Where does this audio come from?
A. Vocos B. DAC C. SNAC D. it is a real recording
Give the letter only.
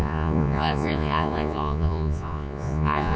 A